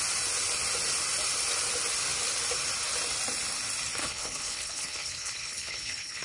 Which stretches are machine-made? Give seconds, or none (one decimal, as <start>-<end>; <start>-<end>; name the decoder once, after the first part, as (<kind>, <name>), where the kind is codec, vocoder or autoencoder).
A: 4.0-6.2 (codec, HILCodec)